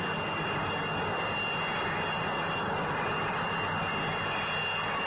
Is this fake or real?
real